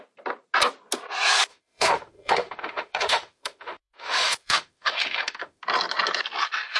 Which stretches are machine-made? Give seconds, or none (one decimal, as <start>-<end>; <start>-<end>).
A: 1.5-5.6